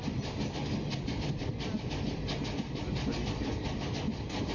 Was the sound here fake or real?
real